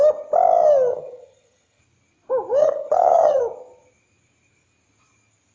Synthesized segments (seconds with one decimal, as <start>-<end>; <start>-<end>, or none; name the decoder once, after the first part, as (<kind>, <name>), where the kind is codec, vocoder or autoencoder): 0.9-1.8 (vocoder, HiFi-GAN); 2.6-3.4